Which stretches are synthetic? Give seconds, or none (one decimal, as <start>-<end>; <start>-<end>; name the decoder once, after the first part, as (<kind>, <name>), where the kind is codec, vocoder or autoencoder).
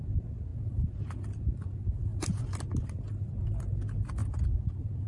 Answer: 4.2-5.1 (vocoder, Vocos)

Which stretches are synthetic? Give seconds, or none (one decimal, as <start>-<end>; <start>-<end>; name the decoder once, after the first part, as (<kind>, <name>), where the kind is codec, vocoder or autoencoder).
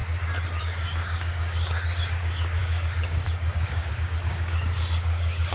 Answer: 0.6-5.5 (codec, DAC)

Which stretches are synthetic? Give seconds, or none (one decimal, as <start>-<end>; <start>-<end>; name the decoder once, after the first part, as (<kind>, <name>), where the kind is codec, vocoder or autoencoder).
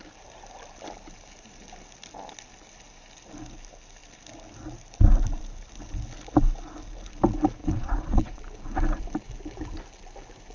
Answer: 7.6-8.4 (vocoder, Vocos)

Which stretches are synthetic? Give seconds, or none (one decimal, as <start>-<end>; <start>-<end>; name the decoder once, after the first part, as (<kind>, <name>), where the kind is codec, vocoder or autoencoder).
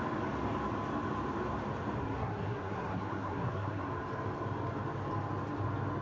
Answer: 2.0-3.9 (codec, SNAC)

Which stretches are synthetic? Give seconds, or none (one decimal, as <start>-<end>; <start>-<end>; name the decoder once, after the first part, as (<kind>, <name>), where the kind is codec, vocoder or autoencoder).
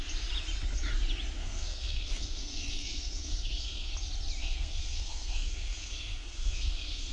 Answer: 1.4-3.9 (codec, SNAC); 4.4-7.1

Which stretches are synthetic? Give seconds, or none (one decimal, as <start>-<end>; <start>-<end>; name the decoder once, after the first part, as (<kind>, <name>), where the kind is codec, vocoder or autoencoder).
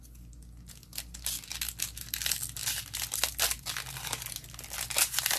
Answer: none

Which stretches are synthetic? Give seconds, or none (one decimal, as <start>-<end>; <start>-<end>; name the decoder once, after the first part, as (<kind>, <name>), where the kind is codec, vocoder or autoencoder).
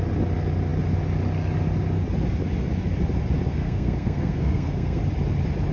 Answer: 3.5-5.0 (codec, SNAC)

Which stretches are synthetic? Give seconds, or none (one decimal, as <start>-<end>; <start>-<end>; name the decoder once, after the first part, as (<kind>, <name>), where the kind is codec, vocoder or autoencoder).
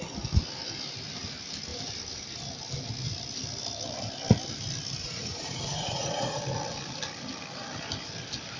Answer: 5.0-6.4 (vocoder, Vocos)